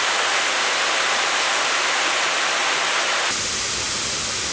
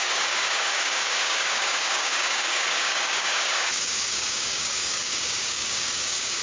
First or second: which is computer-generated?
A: second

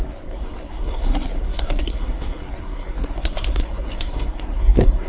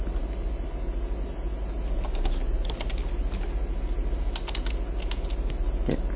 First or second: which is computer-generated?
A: first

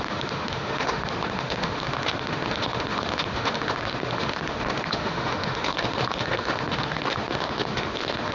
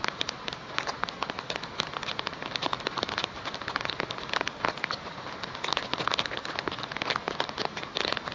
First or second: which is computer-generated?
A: first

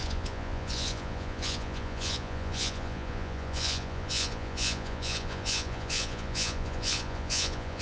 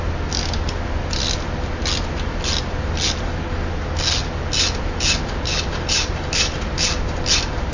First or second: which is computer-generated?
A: first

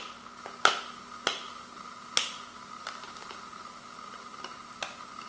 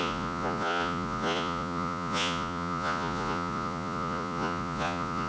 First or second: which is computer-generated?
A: second